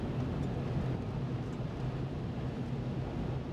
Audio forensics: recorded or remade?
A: recorded